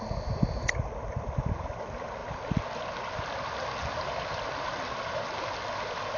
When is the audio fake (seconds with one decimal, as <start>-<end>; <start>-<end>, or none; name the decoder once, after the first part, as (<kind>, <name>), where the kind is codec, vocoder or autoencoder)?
none